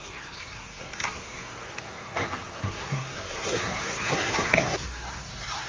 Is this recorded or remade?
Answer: remade